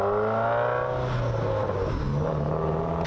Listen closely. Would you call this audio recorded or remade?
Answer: recorded